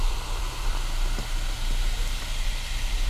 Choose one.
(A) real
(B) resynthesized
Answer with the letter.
B